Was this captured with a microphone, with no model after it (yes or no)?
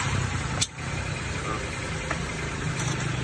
no